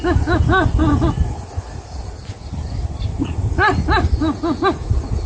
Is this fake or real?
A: real